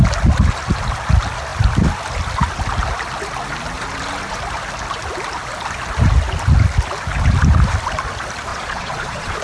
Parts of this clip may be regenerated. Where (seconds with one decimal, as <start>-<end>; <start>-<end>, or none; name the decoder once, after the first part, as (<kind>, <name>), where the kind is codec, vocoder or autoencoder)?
8.5-9.4 (vocoder, Vocos)